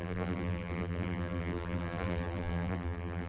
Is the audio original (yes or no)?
no